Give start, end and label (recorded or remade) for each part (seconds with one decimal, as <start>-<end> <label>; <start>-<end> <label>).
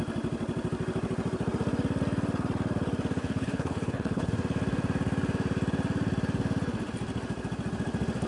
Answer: 0.0-3.2 recorded; 3.2-4.3 remade; 4.3-8.3 recorded